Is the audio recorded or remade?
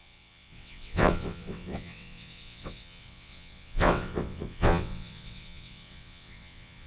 remade